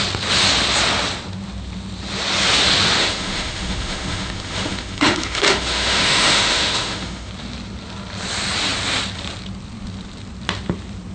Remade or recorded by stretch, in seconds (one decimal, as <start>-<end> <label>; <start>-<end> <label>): 0.0-3.0 recorded; 3.0-7.3 remade; 7.3-11.1 recorded